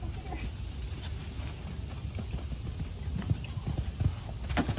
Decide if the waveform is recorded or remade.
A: recorded